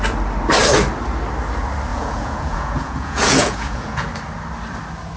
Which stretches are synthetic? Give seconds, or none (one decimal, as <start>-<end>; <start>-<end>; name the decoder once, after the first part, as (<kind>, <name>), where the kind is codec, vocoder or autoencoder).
1.9-4.1 (vocoder, Vocos)